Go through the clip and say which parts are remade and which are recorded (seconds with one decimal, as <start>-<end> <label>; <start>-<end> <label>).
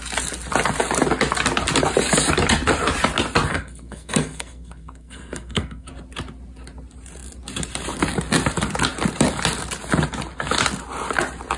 0.0-3.5 recorded; 3.5-5.9 remade; 5.9-11.6 recorded